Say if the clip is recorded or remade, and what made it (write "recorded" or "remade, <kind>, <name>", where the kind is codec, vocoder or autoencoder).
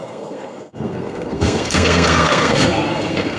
remade, codec, SNAC